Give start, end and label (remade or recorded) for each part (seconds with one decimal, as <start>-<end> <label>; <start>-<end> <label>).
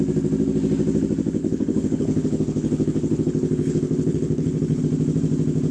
0.0-1.4 recorded; 1.4-4.8 remade; 4.8-5.7 recorded